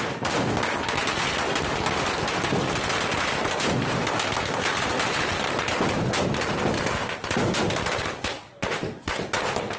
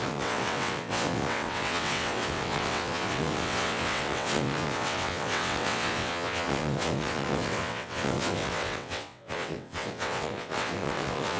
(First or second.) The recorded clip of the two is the first